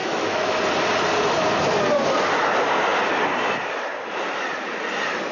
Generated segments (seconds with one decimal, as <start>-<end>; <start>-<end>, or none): 0.0-0.6